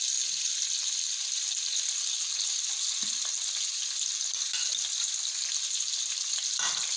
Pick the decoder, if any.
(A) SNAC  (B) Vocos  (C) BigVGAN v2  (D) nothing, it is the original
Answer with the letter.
D